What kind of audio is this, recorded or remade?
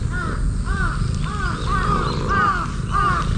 recorded